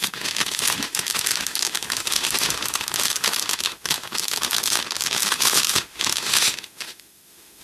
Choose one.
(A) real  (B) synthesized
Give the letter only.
B